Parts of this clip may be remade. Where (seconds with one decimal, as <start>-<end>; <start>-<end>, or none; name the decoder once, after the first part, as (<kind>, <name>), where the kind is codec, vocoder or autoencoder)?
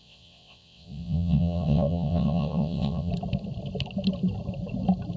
0.0-3.1 (vocoder, WaveNeXt)